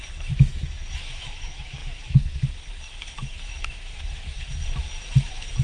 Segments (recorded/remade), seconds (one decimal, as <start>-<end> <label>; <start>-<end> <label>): 0.0-5.6 remade